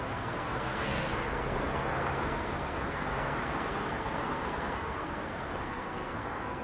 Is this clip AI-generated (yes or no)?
yes